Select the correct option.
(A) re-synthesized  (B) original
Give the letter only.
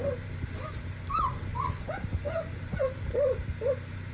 A